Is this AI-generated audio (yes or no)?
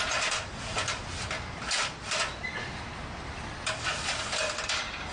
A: no